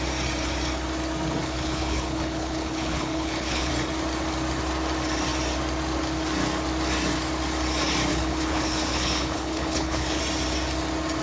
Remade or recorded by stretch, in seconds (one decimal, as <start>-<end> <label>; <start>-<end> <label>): 0.0-1.4 recorded; 1.4-3.7 remade; 3.7-8.1 recorded; 8.1-10.2 remade; 10.2-11.2 recorded